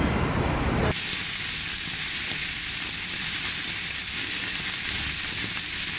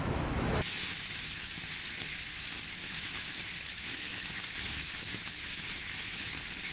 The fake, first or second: second